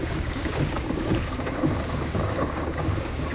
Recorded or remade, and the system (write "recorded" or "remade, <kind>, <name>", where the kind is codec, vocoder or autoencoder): remade, codec, DAC